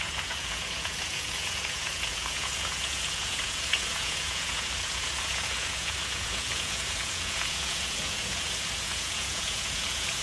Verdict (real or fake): fake